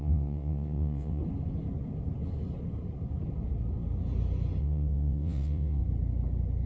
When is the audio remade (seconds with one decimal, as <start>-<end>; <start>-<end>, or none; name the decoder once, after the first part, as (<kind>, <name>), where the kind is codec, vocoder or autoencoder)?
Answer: 0.0-1.2 (vocoder, WaveNeXt); 4.6-5.8